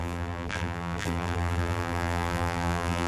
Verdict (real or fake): fake